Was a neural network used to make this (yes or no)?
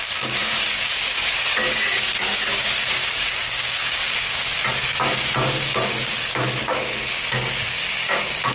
yes